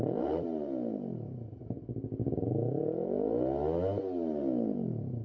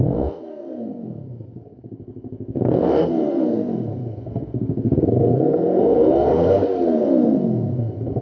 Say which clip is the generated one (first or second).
second